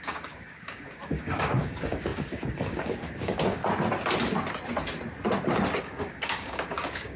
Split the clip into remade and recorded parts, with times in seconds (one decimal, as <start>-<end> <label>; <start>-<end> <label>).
0.0-3.6 remade; 3.6-5.8 recorded; 5.8-7.2 remade